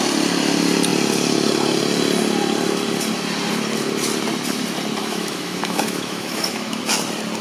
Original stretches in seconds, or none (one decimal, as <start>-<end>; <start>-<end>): 0.0-5.0; 6.8-7.4